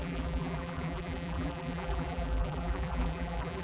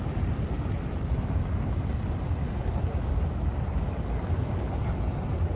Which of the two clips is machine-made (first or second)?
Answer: first